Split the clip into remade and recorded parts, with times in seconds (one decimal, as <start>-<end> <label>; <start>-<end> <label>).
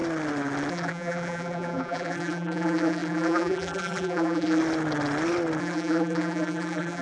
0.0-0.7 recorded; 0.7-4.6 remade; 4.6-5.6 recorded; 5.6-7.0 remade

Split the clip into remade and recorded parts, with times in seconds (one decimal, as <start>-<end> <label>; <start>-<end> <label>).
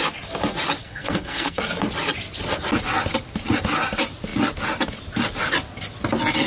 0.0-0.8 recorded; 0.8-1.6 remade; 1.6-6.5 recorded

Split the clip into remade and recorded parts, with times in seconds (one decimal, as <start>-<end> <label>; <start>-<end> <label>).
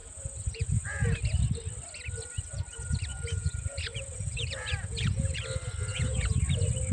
0.0-1.2 remade; 1.2-3.1 recorded; 3.1-5.4 remade; 5.4-5.9 recorded; 5.9-6.4 remade; 6.4-6.9 recorded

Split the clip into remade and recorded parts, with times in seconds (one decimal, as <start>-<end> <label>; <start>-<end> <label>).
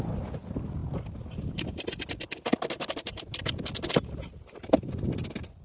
0.0-5.6 recorded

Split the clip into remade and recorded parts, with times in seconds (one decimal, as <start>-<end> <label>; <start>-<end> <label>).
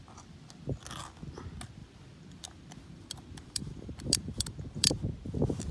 0.0-1.8 recorded; 1.8-5.0 remade; 5.0-5.7 recorded